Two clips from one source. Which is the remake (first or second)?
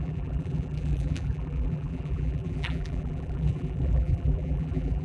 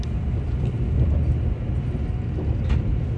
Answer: first